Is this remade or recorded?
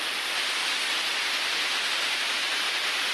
recorded